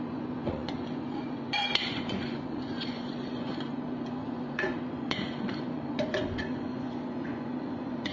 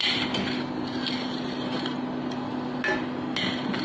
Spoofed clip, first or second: first